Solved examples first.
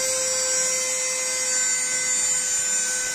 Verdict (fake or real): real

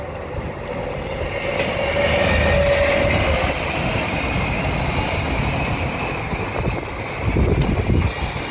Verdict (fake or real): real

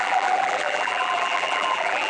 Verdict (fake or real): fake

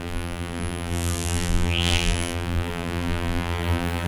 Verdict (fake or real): fake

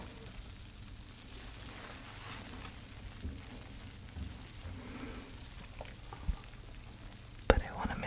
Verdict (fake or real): real